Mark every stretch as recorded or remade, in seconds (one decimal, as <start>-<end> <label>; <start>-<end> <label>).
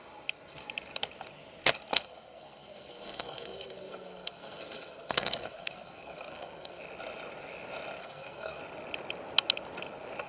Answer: 0.0-1.9 recorded; 1.9-6.8 remade; 6.8-8.0 recorded; 8.0-8.6 remade; 8.6-10.3 recorded